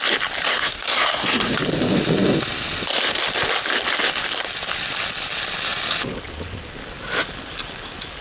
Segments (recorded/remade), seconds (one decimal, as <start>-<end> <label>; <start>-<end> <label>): 0.0-0.5 recorded; 0.5-1.6 remade; 1.6-8.2 recorded